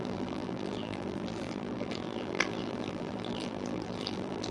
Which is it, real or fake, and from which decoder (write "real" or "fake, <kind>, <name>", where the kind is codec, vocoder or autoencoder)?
fake, vocoder, BigVGAN v2